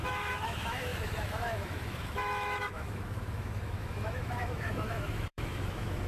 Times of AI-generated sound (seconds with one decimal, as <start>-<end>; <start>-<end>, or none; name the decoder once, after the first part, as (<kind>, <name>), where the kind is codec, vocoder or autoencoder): 0.0-6.1 (autoencoder, DAC-VAE)